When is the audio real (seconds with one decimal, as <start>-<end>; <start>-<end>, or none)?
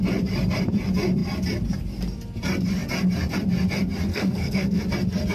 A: 0.0-4.1; 4.8-5.3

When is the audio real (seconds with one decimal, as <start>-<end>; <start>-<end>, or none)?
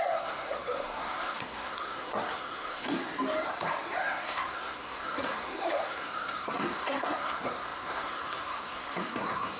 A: 3.1-4.0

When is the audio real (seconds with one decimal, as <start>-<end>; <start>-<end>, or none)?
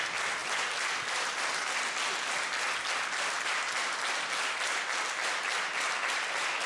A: 0.0-6.7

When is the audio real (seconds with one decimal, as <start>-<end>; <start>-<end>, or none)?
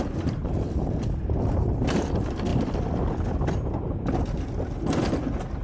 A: 0.0-5.6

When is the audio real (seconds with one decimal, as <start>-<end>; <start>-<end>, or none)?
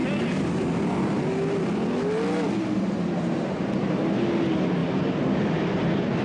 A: 0.0-6.2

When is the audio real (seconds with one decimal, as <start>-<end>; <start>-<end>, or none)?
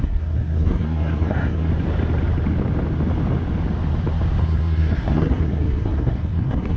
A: 1.7-4.4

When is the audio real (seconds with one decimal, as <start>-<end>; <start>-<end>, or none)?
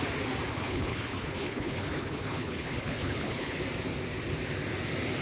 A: 0.0-0.5; 3.6-5.2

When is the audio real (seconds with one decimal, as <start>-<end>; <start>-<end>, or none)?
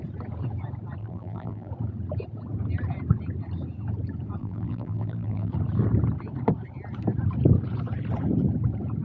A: 0.0-1.0; 1.7-4.4; 5.5-9.0